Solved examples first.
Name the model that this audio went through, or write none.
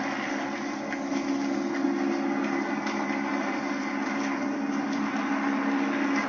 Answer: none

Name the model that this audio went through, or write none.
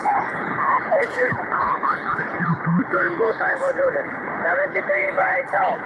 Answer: codec, HILCodec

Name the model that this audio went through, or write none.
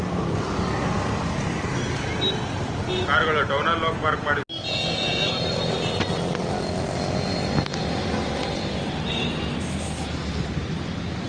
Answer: none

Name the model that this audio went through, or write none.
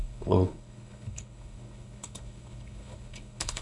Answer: codec, HILCodec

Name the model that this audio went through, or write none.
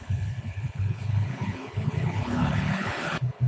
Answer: codec, HILCodec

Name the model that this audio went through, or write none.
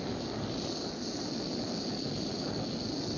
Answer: none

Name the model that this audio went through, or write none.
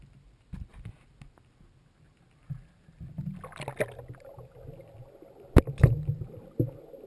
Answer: none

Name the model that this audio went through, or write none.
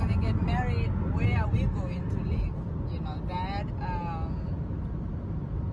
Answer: none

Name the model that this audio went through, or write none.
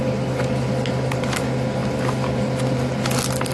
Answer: none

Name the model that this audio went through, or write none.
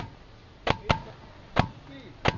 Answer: none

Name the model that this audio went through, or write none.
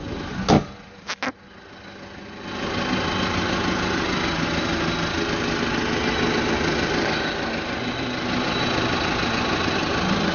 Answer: none